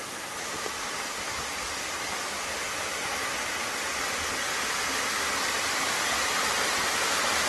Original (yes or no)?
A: yes